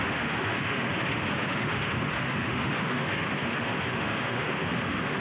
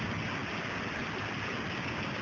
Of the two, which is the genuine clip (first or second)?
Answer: second